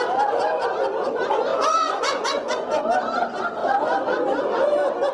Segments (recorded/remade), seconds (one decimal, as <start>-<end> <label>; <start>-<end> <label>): 0.0-1.5 recorded; 1.5-2.8 remade; 2.8-5.1 recorded